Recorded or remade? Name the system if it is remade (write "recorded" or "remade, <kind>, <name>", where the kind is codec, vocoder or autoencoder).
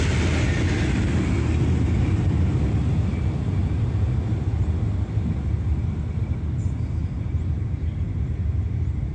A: recorded